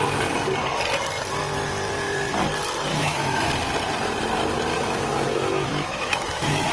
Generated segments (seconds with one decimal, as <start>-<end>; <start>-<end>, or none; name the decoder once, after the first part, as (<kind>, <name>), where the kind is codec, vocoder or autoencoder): 2.9-3.5 (autoencoder, DAC-VAE); 4.7-6.7